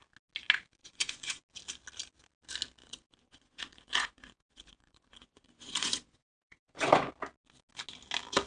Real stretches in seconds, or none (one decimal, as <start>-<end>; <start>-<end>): 0.0-0.8; 1.4-2.8; 7.1-8.5